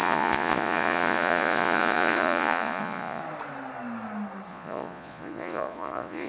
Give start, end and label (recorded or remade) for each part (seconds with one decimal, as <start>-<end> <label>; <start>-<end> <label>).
0.0-3.2 remade; 3.2-4.5 recorded; 4.5-6.3 remade